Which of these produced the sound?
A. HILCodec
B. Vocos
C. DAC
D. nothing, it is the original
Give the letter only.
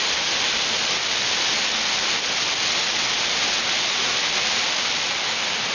D